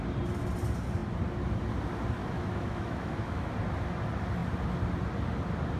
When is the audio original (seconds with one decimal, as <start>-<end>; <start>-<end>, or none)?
0.0-2.2; 3.5-5.8